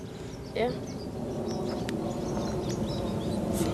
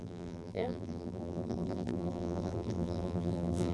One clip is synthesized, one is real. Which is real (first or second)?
first